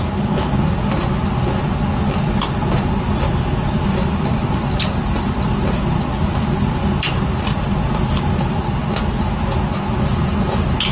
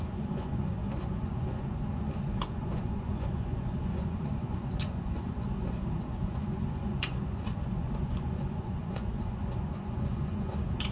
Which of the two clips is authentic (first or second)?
first